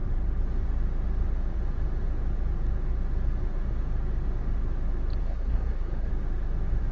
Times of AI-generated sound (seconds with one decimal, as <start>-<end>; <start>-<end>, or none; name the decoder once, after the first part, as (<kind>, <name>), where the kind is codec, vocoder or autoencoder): 5.2-6.1 (codec, SNAC)